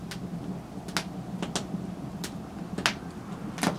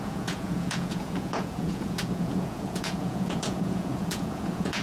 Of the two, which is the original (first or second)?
first